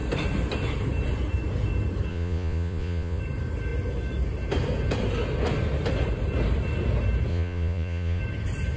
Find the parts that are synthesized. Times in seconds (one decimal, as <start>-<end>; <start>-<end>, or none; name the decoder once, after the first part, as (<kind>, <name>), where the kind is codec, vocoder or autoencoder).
2.1-3.2 (vocoder, Vocos); 7.3-8.2